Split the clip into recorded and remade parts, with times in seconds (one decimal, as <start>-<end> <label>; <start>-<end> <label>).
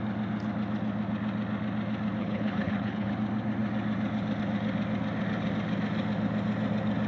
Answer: 0.0-2.2 recorded; 2.2-3.1 remade; 3.1-7.1 recorded